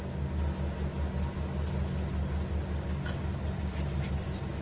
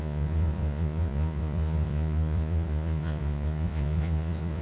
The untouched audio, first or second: first